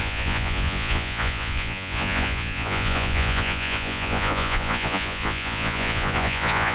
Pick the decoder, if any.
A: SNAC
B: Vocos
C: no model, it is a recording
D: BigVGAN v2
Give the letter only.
B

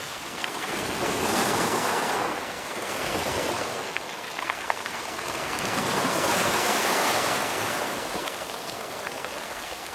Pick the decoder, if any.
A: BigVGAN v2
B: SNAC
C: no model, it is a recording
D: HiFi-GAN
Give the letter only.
B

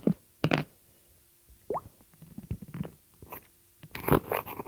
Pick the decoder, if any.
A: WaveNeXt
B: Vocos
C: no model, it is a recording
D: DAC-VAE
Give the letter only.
C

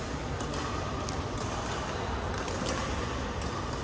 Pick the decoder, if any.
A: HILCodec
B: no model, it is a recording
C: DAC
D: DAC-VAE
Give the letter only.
B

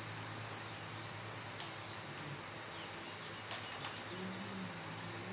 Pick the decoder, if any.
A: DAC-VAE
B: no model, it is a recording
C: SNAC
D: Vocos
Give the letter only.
B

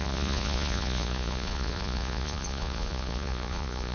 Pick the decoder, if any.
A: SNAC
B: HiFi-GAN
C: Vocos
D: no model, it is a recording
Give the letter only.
C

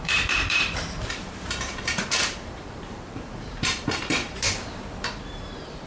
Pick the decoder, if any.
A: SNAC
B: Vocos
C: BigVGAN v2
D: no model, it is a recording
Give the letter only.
C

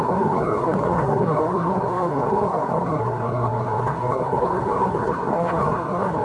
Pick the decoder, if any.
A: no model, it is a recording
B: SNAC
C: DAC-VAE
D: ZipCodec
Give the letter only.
B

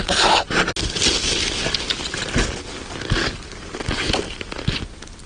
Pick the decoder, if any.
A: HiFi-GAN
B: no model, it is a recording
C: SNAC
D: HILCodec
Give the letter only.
B